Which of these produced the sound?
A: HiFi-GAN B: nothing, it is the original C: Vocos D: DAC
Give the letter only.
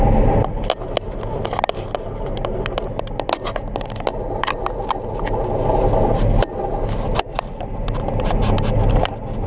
B